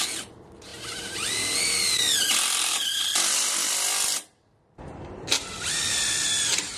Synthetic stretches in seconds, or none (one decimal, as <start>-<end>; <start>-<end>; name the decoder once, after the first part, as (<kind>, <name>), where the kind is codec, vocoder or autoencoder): none